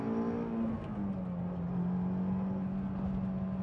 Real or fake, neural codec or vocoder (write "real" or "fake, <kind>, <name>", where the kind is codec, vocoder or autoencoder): real